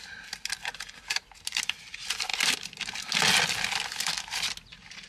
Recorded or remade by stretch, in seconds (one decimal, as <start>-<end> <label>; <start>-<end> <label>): 0.0-5.1 recorded